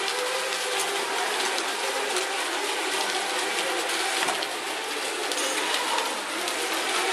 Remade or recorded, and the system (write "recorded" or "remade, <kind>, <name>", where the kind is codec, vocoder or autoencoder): recorded